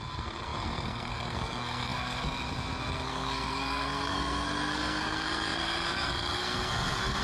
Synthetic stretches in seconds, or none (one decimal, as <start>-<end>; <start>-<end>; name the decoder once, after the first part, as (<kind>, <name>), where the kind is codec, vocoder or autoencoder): 0.0-7.2 (codec, SNAC)